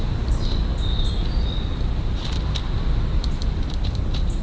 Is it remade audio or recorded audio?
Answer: recorded